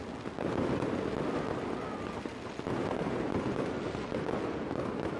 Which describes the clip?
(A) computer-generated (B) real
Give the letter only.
B